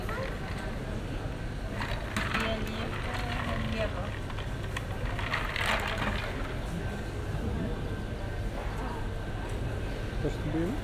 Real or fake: real